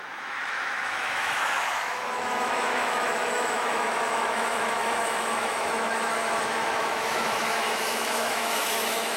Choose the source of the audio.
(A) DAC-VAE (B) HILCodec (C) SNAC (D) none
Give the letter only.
A